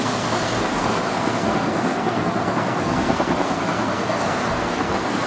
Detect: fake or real fake